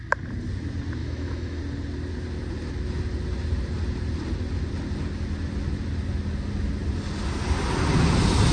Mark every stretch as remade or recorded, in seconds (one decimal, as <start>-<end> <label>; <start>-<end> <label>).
0.0-1.0 recorded; 1.0-1.6 remade; 1.6-8.5 recorded